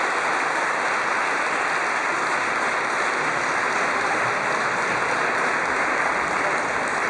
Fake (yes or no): no